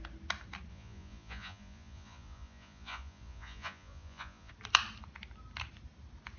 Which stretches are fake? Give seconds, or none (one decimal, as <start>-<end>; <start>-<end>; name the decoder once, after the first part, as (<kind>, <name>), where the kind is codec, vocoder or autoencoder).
0.7-4.5 (vocoder, Vocos)